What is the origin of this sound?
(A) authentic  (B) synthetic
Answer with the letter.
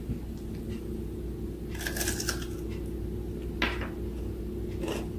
A